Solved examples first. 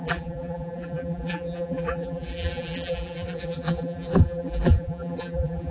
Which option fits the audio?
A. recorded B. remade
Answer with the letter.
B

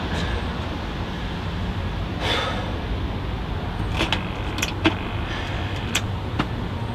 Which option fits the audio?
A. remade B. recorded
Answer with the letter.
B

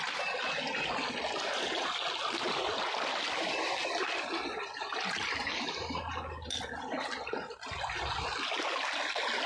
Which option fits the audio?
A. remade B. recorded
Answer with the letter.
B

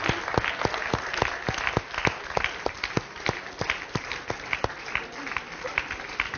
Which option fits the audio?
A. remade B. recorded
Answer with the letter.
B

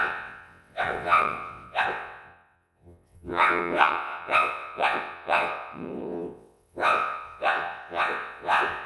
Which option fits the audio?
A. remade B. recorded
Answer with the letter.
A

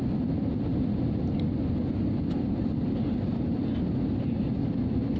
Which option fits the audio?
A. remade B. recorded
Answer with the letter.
B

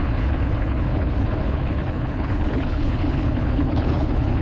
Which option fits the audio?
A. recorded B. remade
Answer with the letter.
B